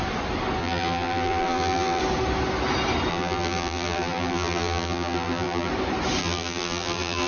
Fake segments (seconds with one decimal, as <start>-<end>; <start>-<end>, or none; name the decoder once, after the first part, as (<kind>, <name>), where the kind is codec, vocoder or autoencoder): 0.6-2.0 (vocoder, BigVGAN v2); 3.1-5.7; 6.2-7.3